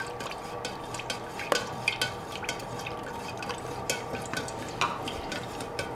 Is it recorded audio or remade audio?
recorded